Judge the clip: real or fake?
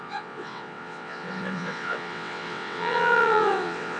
fake